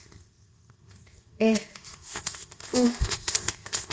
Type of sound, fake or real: fake